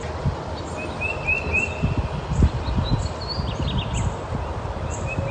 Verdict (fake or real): real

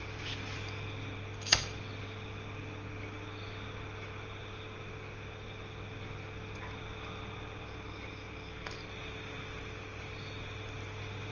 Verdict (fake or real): real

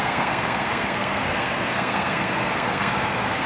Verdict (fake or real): fake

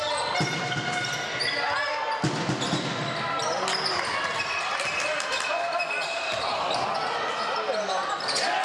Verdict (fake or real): real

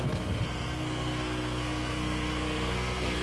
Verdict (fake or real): fake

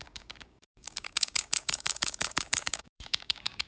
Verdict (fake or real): fake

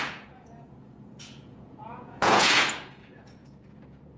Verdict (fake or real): fake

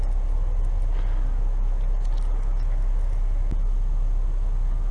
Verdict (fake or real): real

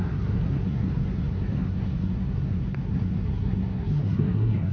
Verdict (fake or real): fake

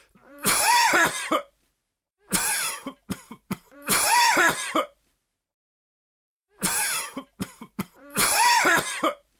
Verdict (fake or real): fake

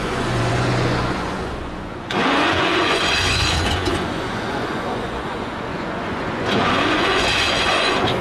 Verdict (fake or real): fake